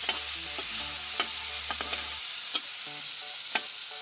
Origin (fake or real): real